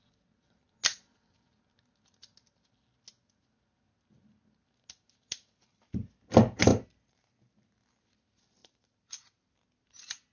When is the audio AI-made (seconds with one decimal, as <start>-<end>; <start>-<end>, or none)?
6.7-7.3; 8.6-9.5